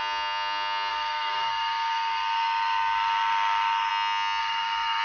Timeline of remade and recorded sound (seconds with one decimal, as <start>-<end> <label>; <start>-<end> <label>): 0.0-0.9 recorded; 0.9-3.9 remade; 3.9-4.4 recorded; 4.4-5.0 remade

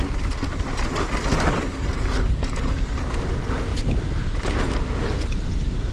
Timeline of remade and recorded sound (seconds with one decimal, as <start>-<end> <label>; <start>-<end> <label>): 0.0-1.7 recorded; 1.7-2.6 remade; 2.6-5.9 recorded

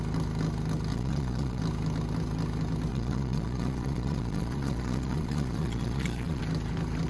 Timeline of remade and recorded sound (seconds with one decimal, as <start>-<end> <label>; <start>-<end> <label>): 0.0-0.9 recorded; 0.9-1.6 remade; 1.6-2.9 recorded; 2.9-6.4 remade; 6.4-7.1 recorded

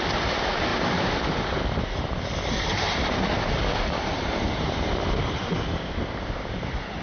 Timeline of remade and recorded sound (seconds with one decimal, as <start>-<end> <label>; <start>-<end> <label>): 0.0-0.7 recorded; 0.7-2.1 remade; 2.1-7.0 recorded